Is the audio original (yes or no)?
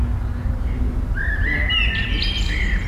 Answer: yes